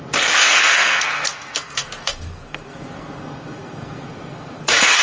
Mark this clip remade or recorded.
remade